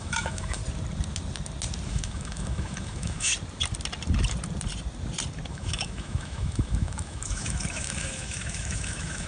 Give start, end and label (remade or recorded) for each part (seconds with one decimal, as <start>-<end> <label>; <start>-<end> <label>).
0.0-0.6 remade; 0.6-1.9 recorded; 1.9-3.3 remade; 3.3-5.5 recorded; 5.5-9.3 remade